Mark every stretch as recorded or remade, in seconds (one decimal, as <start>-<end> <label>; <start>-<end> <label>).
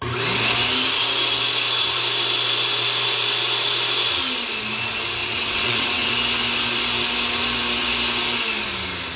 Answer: 0.0-5.2 recorded; 5.2-6.1 remade; 6.1-9.2 recorded